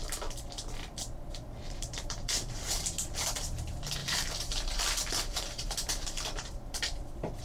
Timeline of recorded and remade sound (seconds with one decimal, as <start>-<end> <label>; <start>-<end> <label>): 0.0-1.6 recorded; 1.6-2.7 remade; 2.7-4.0 recorded; 4.0-6.5 remade; 6.5-7.4 recorded